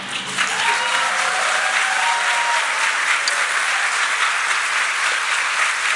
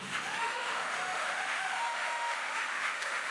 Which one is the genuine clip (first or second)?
first